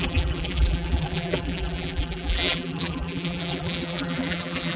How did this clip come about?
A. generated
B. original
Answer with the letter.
A